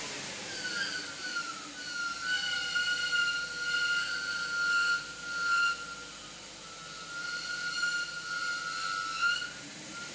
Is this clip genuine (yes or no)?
yes